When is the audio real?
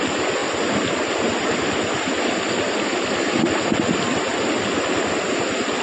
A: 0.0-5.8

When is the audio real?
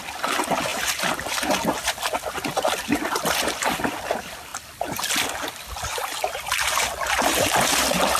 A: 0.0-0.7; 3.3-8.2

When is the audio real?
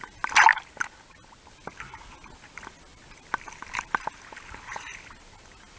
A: 0.0-5.8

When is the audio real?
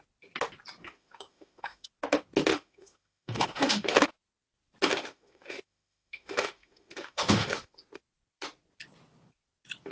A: 0.0-0.8; 1.9-2.5; 4.1-4.9; 7.8-9.9